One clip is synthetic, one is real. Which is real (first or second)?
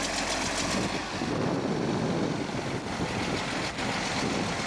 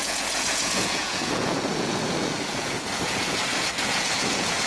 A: first